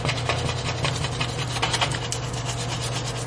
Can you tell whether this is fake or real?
real